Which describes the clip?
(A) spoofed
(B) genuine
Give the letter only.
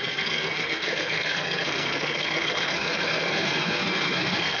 A